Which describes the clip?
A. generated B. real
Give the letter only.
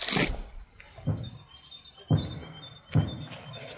B